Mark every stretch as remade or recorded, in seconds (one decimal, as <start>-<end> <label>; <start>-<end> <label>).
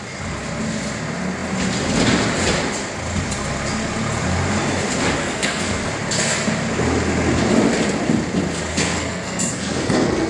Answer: 0.0-5.2 recorded; 5.2-5.9 remade; 5.9-8.7 recorded; 8.7-10.3 remade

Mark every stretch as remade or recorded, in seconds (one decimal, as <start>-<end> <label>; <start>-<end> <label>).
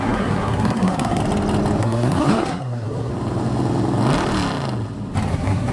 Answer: 0.0-1.2 remade; 1.2-1.8 recorded; 1.8-3.1 remade; 3.1-5.3 recorded; 5.3-5.7 remade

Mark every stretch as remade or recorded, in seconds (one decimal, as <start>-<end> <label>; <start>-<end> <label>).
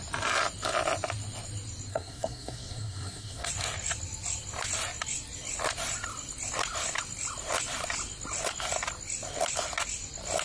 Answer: 0.0-1.9 recorded; 1.9-3.5 remade; 3.5-10.4 recorded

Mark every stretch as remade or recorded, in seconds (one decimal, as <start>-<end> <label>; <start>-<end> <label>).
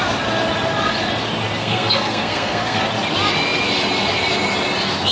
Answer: 0.0-1.6 recorded; 1.6-2.8 remade; 2.8-5.1 recorded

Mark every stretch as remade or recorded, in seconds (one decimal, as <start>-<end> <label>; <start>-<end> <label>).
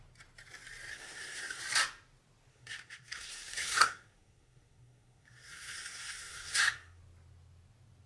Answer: 0.0-0.9 recorded; 0.9-1.6 remade; 1.6-2.5 recorded; 2.5-7.0 remade; 7.0-8.1 recorded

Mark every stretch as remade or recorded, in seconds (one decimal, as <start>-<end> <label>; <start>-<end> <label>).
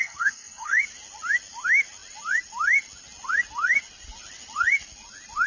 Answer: 0.0-0.8 remade; 0.8-5.5 recorded